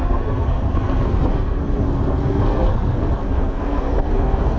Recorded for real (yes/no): no